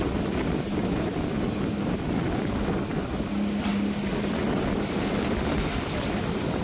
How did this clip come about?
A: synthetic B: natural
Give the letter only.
B